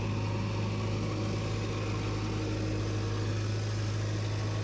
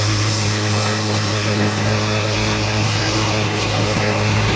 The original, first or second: first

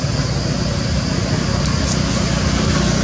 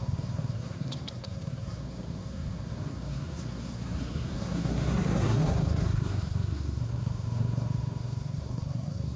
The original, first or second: first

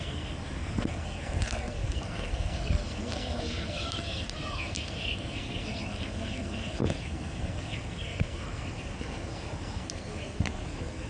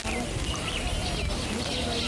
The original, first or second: second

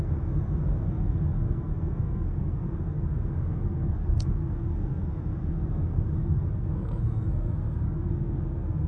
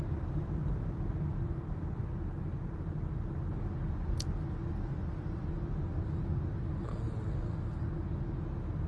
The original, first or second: second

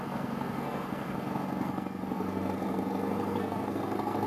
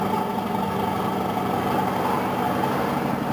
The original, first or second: second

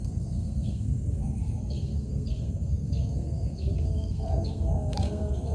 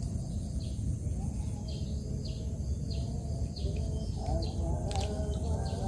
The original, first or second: second